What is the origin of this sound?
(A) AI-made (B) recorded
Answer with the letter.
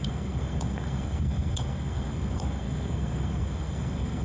A